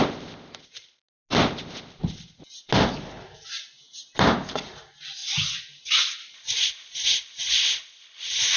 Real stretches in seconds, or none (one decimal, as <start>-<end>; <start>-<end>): 0.0-8.6